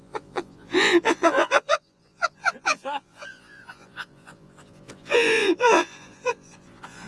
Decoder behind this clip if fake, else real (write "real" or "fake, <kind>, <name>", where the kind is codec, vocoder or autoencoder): fake, vocoder, Vocos